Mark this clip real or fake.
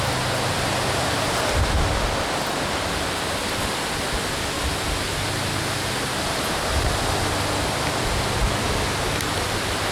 real